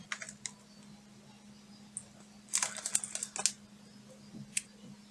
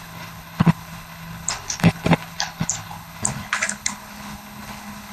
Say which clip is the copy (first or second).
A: second